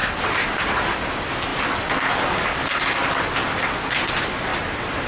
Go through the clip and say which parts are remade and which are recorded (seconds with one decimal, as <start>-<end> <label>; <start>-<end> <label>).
0.0-0.8 remade; 0.8-4.5 recorded; 4.5-5.1 remade